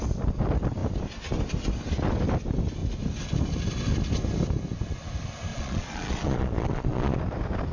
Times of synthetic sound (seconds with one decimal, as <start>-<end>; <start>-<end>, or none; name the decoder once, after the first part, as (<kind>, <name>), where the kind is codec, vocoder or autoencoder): 5.5-7.2 (vocoder, Vocos)